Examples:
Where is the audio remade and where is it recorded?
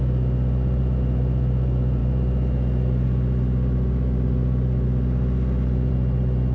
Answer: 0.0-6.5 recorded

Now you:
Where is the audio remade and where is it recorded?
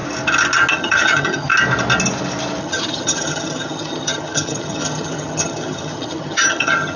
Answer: 0.0-0.7 recorded; 0.7-1.5 remade; 1.5-2.6 recorded; 2.6-7.0 remade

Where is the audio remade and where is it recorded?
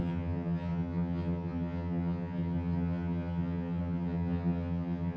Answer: 0.0-5.2 remade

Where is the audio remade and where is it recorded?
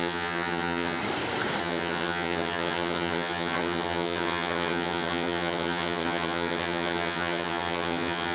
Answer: 0.0-1.0 remade; 1.0-1.6 recorded; 1.6-8.3 remade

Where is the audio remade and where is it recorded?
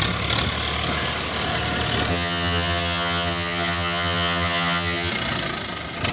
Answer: 0.0-2.1 recorded; 2.1-5.1 remade; 5.1-6.1 recorded